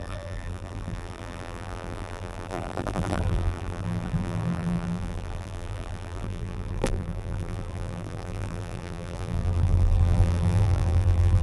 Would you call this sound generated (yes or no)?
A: yes